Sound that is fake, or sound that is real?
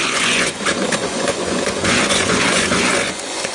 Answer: fake